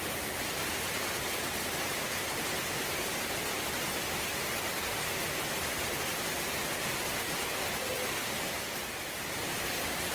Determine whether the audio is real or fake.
real